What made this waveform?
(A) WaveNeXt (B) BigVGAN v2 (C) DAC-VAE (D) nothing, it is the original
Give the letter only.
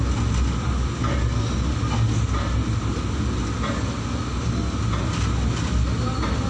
D